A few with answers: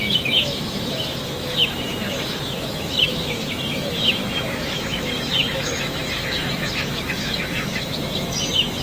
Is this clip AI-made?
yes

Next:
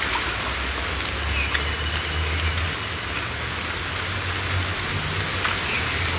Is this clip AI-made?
no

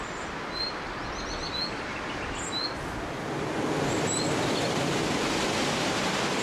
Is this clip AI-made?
no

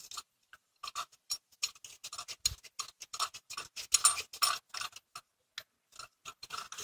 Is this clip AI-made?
no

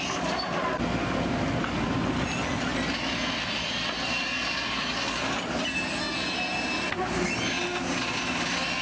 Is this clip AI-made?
no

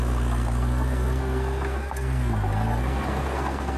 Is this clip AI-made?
yes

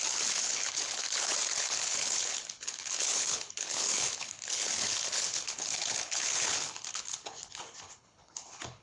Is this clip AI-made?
yes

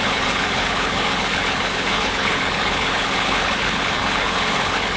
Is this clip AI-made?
yes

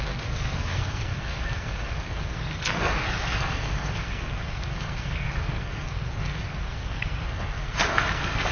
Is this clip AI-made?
yes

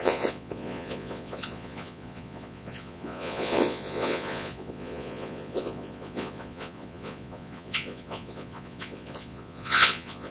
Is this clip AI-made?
yes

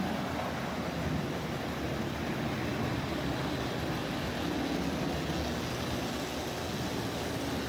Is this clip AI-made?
no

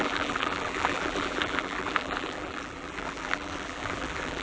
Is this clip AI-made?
yes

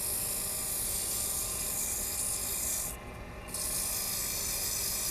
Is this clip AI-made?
no